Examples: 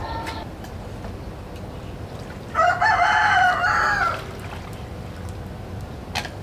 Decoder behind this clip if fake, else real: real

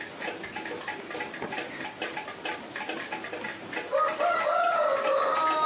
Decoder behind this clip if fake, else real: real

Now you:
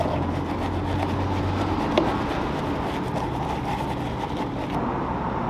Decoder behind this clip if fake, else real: real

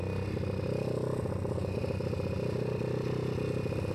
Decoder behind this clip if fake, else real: real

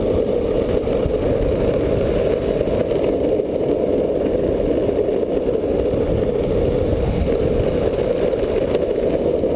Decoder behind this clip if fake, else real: real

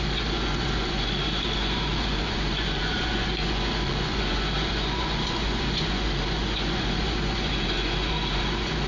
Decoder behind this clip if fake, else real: fake, vocoder, Vocos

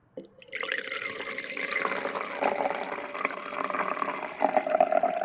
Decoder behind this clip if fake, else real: real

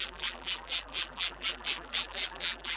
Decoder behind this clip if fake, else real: fake, vocoder, BigVGAN v2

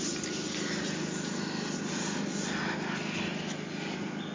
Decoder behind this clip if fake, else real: real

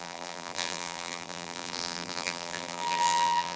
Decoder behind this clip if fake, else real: fake, vocoder, BigVGAN v2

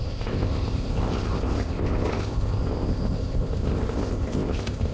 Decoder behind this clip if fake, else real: fake, codec, ZipCodec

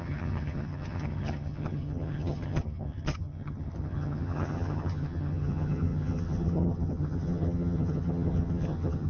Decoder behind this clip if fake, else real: fake, vocoder, HiFi-GAN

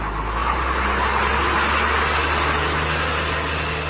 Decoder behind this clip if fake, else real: real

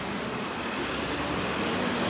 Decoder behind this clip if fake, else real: real